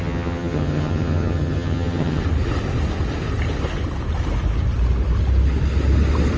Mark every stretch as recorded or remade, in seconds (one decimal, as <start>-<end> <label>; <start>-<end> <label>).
0.0-2.2 remade; 2.2-6.4 recorded